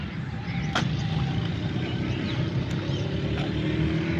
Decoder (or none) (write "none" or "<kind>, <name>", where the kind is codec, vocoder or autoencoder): none